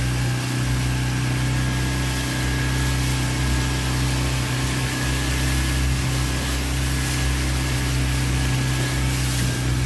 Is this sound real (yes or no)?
yes